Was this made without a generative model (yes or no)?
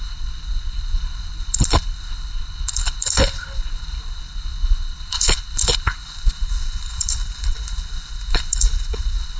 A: no